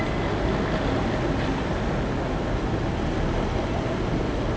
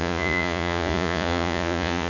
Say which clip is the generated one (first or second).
second